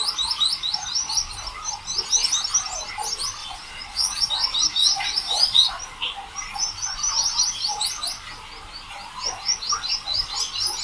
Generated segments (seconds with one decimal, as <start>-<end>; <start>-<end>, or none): 3.4-4.3; 4.8-5.7